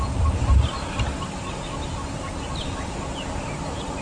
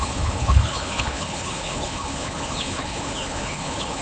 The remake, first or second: second